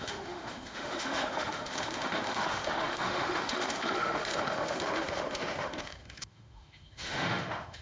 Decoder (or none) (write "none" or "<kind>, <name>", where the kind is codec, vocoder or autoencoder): autoencoder, DAC-VAE